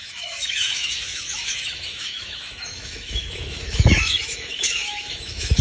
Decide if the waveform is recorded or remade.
remade